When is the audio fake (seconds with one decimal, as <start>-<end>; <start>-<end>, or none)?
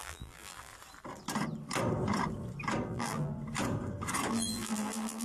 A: 0.0-0.7; 2.9-3.3; 4.3-5.2